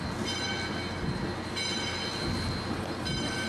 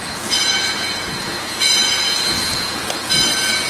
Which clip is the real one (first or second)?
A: first